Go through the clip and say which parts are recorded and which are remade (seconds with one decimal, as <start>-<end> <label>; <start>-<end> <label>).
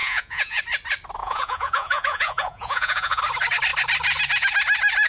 0.0-0.6 remade; 0.6-1.2 recorded; 1.2-3.2 remade; 3.2-5.1 recorded